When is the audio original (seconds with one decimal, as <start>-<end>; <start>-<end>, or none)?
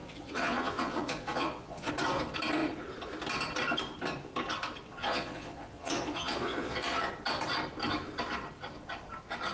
1.9-5.0; 7.1-9.5